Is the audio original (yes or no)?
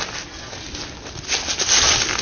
yes